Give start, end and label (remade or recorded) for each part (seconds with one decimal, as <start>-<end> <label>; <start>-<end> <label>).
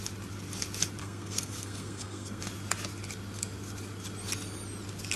0.0-1.0 recorded; 1.0-2.4 remade; 2.4-5.2 recorded